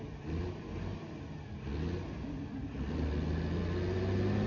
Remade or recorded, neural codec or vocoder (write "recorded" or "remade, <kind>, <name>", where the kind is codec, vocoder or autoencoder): recorded